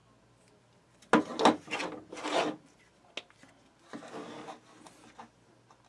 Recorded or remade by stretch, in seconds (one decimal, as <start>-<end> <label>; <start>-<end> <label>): 0.0-5.9 recorded